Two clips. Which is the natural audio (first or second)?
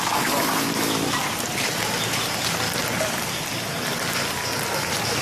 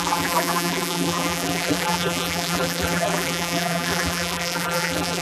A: first